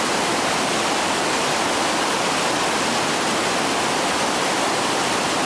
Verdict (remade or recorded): recorded